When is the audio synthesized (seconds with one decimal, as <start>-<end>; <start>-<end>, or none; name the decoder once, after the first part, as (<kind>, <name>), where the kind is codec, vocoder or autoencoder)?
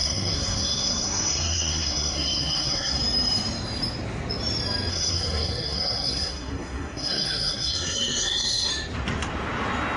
0.0-3.0 (codec, SNAC); 4.9-8.7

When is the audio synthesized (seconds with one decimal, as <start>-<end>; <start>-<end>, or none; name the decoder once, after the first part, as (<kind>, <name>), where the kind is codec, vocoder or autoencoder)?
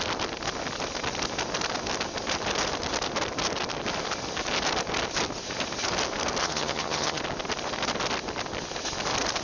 6.4-7.2 (vocoder, HiFi-GAN)